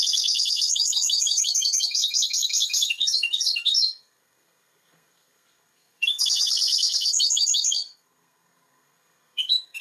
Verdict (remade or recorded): remade